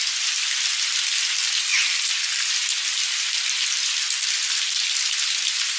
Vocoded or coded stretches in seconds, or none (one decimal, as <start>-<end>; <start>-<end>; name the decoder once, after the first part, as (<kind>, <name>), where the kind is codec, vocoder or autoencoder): none